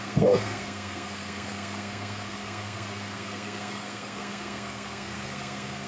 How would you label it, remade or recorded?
remade